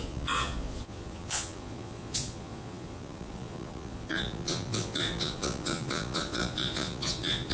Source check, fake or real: fake